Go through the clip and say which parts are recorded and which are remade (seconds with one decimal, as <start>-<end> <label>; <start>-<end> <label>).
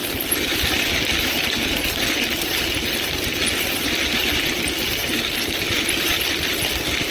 0.0-1.0 remade; 1.0-5.0 recorded; 5.0-7.1 remade